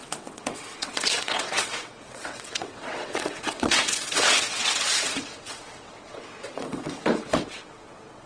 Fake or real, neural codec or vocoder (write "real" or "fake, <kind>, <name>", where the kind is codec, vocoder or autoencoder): fake, vocoder, WaveNeXt